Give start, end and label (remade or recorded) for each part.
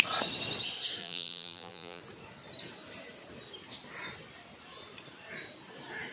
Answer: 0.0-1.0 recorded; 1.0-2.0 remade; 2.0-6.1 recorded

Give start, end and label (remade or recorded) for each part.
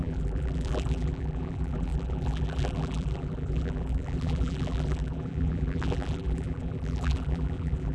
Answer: 0.0-7.9 remade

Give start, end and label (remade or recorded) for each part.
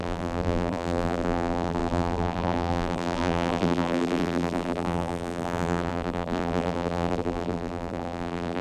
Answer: 0.0-8.6 remade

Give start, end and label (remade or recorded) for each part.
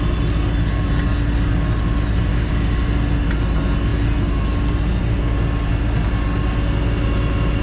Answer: 0.0-2.3 recorded; 2.3-2.8 remade; 2.8-7.6 recorded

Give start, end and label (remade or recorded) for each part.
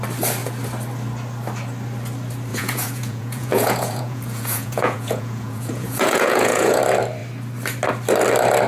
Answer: 0.0-2.5 recorded; 2.5-6.8 remade; 6.8-8.7 recorded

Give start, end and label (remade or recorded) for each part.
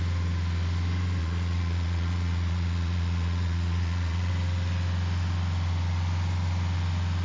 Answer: 0.0-1.2 recorded; 1.2-4.3 remade; 4.3-7.2 recorded